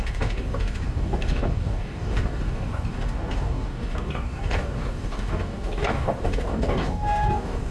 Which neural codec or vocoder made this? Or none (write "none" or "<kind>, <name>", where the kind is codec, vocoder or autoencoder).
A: codec, DAC